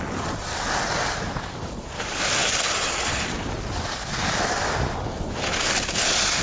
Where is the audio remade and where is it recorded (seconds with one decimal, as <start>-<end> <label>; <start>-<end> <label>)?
0.0-6.4 recorded